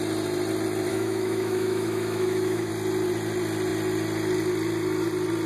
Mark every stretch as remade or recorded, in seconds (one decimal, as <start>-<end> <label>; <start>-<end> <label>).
0.0-0.9 recorded; 0.9-2.7 remade; 2.7-5.5 recorded

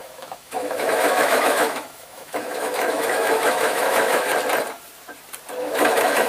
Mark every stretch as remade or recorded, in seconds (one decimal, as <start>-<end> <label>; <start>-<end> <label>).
0.0-4.3 remade; 4.3-5.6 recorded; 5.6-6.3 remade

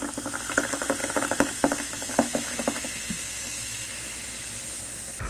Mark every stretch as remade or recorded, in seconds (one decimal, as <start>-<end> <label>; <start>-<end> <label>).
0.0-1.0 recorded; 1.0-4.2 remade; 4.2-5.3 recorded

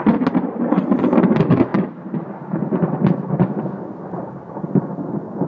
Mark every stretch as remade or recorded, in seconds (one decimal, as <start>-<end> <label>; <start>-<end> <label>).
0.0-5.5 recorded

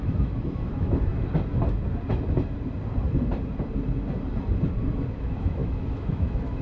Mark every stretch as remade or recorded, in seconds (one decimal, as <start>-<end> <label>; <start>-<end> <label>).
0.0-1.1 remade; 1.1-5.1 recorded; 5.1-6.6 remade

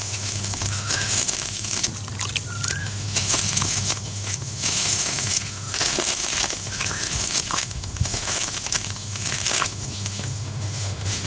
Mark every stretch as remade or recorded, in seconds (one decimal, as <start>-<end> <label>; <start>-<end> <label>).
0.0-1.9 remade; 1.9-2.8 recorded; 2.8-11.3 remade

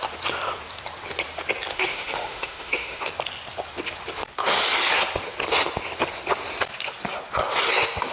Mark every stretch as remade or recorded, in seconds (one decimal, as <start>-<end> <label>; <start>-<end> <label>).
0.0-1.7 recorded; 1.7-3.1 remade; 3.1-8.1 recorded

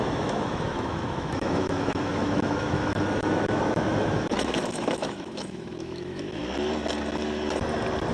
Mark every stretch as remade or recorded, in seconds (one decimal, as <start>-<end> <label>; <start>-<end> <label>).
0.0-6.4 remade; 6.4-8.1 recorded